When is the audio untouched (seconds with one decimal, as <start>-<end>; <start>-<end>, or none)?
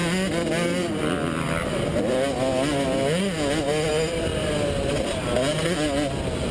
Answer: 0.0-6.5